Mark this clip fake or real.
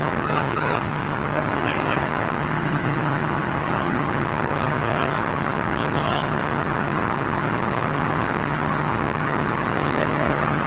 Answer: fake